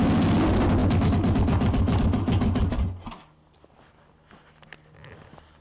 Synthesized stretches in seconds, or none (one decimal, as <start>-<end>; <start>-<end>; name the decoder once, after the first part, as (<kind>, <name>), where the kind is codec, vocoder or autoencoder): none